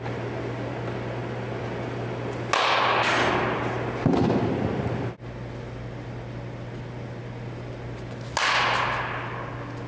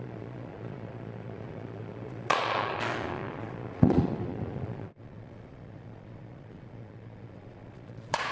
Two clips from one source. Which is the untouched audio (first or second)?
first